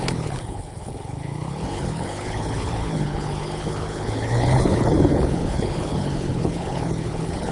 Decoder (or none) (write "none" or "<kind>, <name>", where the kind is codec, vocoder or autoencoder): codec, HILCodec